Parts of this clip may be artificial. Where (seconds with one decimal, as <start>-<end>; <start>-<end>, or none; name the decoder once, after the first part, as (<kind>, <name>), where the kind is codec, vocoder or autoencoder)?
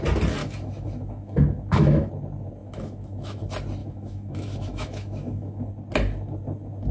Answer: 0.4-2.1 (autoencoder, DAC-VAE); 2.6-3.4; 3.8-5.7